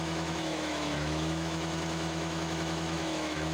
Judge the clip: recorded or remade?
remade